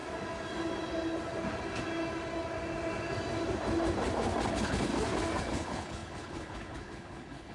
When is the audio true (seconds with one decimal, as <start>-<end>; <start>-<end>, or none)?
0.0-4.5; 4.9-5.4

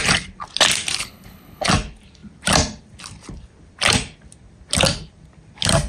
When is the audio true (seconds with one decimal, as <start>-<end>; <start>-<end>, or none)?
0.0-1.0; 1.7-5.9

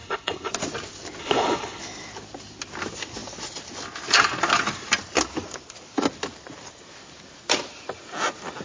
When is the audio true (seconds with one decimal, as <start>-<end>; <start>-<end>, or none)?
0.5-1.2; 1.8-8.6

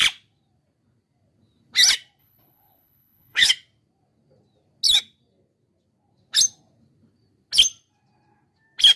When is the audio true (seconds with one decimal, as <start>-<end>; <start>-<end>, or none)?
0.0-2.2; 3.5-9.0

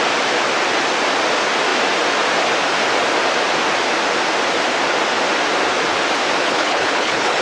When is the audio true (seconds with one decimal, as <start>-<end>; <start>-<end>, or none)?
0.0-6.4